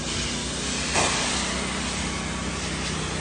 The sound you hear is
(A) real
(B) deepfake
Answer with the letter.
A